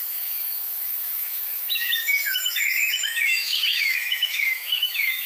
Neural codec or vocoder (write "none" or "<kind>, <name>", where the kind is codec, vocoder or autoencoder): autoencoder, DAC-VAE